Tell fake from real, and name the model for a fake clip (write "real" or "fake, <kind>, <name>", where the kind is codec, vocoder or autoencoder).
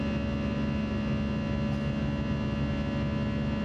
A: real